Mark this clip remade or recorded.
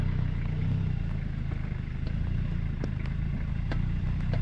recorded